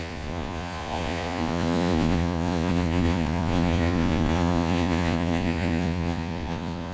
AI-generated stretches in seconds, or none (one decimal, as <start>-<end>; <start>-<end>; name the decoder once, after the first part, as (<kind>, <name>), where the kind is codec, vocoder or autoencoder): 0.0-6.9 (vocoder, Vocos)